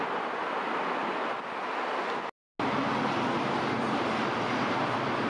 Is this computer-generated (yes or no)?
no